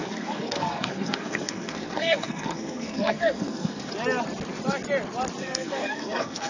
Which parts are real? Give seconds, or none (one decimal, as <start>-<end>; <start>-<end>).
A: 3.9-5.4